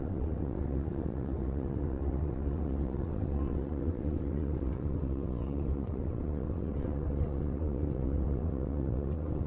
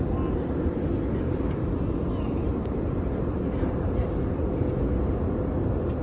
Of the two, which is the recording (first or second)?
second